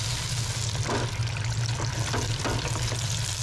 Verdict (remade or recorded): recorded